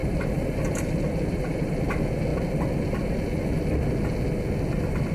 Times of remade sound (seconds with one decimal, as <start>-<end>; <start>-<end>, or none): 0.0-1.8